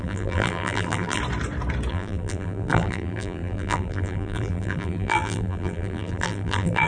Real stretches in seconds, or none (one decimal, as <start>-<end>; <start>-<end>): 1.2-1.9